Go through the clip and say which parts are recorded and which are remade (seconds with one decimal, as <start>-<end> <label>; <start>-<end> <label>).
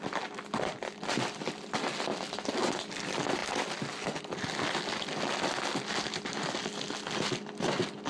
0.0-8.1 recorded